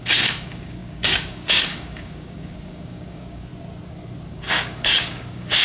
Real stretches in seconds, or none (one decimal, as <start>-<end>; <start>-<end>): 3.5-4.3